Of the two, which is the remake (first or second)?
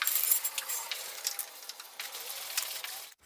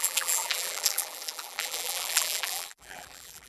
second